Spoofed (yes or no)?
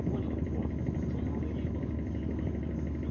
no